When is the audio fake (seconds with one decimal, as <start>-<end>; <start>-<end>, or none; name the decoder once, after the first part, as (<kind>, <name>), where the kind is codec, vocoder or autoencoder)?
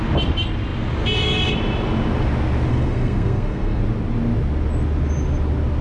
2.7-3.8 (codec, SNAC)